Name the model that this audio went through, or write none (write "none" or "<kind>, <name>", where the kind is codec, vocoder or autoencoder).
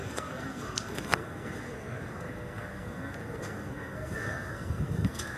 codec, SNAC